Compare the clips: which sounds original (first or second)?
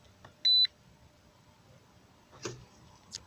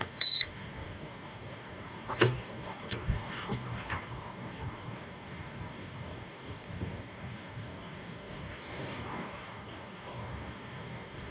first